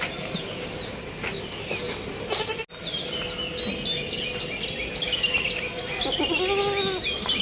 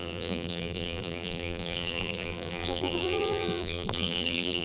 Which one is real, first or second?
first